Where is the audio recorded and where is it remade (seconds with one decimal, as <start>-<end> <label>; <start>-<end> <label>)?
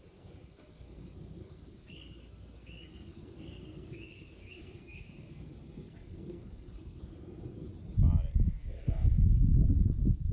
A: 0.0-7.7 remade; 7.7-8.6 recorded; 8.6-10.3 remade